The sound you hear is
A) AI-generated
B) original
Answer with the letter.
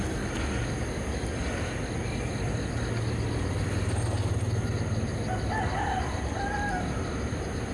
B